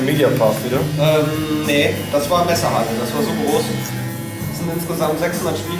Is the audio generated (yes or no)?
no